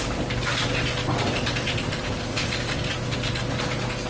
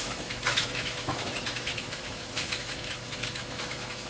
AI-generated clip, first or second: second